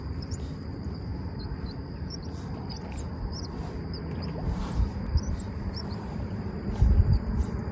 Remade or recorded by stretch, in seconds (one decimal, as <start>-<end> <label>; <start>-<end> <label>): 0.0-1.1 remade; 1.1-4.2 recorded; 4.2-7.7 remade